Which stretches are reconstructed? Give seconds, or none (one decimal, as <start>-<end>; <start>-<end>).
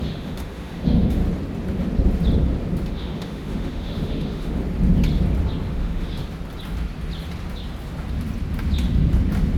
0.0-1.2; 2.9-4.6; 5.7-6.2